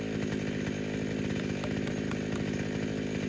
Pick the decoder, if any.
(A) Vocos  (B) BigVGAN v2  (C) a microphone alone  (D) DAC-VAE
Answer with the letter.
C